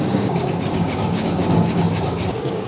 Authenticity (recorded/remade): remade